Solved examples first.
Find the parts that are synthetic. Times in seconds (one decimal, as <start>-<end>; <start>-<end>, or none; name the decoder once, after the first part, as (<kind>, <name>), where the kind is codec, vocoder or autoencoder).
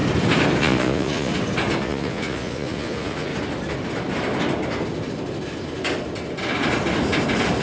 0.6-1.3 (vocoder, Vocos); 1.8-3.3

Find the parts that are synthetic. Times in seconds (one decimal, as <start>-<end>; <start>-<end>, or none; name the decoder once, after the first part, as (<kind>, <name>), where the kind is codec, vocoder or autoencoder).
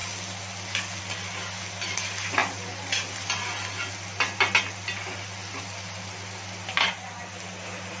none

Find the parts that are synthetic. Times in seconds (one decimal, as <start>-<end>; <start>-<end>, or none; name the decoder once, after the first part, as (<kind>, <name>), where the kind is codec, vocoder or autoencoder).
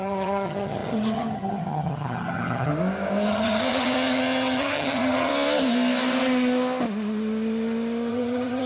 0.0-2.7 (vocoder, HiFi-GAN); 3.3-5.3; 8.1-8.7